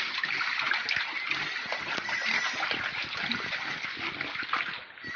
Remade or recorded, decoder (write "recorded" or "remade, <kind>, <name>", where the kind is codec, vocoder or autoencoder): recorded